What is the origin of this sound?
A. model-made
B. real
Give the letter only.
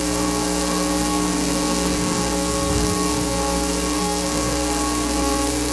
A